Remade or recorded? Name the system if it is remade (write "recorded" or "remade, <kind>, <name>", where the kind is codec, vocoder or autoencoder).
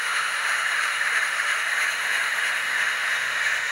remade, autoencoder, DAC-VAE